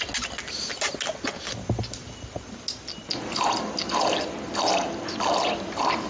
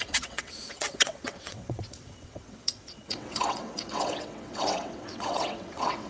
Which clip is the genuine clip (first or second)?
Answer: first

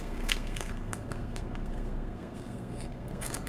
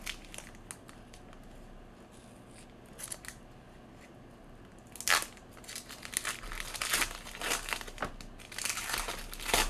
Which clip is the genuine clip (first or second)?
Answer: second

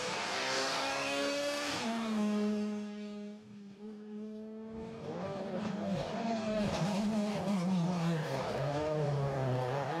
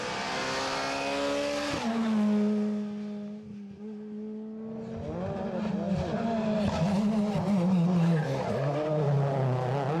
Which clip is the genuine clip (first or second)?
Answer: second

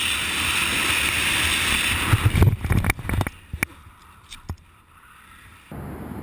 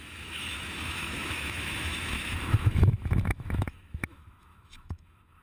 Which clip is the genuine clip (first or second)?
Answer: first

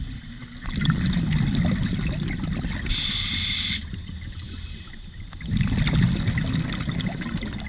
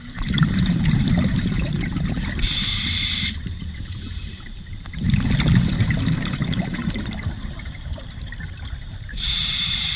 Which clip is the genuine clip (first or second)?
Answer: first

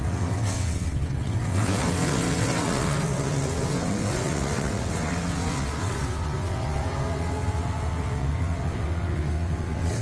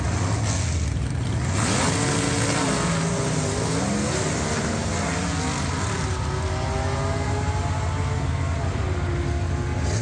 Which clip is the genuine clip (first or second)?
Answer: second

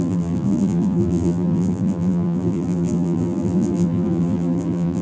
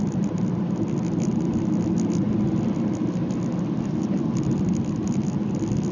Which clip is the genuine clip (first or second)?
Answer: second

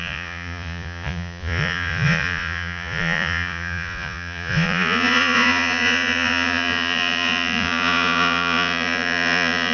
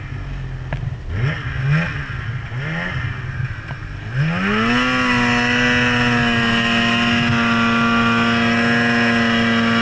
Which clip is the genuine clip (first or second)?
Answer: second